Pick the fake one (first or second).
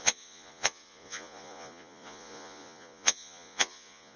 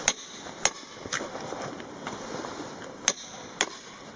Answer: first